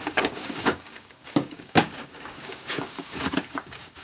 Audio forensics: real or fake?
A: fake